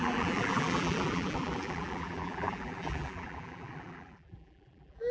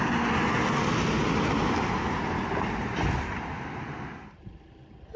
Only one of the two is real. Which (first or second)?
second